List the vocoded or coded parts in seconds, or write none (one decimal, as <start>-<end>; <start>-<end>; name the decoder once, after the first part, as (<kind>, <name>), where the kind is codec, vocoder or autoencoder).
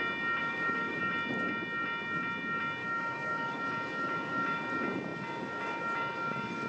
0.4-1.0 (autoencoder, DAC-VAE); 2.8-3.6